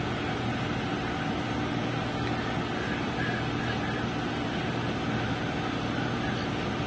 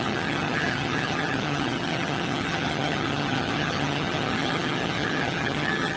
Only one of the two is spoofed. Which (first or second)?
second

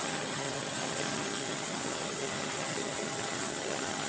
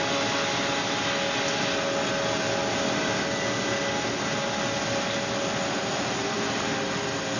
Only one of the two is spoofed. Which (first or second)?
first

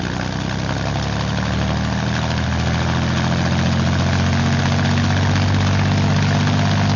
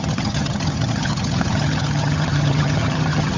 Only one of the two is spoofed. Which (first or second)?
second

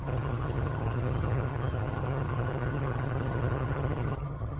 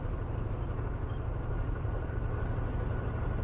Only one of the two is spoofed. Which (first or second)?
first